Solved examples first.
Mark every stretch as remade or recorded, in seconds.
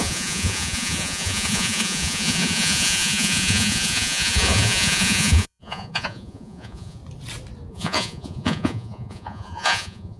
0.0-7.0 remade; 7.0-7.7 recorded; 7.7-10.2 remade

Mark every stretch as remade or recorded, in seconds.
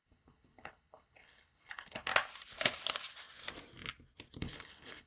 0.0-2.1 remade; 2.1-4.4 recorded; 4.4-5.1 remade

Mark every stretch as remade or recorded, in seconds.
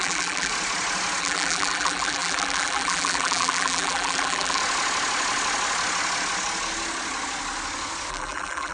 0.0-0.5 remade; 0.5-1.2 recorded; 1.2-4.6 remade; 4.6-8.1 recorded; 8.1-8.7 remade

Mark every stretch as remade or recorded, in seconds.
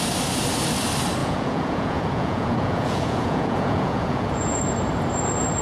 0.0-1.2 recorded; 1.2-4.6 remade; 4.6-5.6 recorded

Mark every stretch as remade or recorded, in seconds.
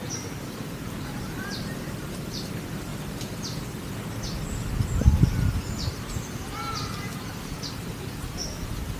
0.0-2.9 remade; 2.9-7.7 recorded; 7.7-9.0 remade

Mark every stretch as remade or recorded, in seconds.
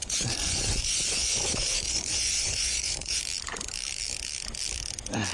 0.0-3.2 remade; 3.2-5.3 recorded